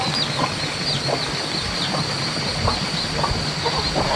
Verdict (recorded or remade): recorded